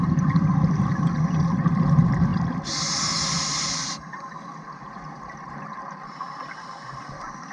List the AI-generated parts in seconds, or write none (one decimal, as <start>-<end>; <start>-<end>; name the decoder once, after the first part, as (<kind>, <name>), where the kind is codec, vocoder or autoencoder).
none